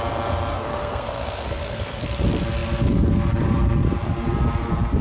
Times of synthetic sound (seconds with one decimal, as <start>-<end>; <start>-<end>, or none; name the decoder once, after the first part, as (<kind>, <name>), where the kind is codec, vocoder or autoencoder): 0.5-2.0 (codec, SNAC)